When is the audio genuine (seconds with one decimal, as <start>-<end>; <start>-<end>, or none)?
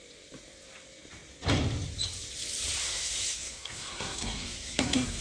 0.0-2.8